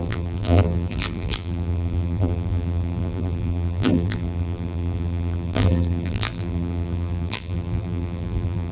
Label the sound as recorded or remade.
remade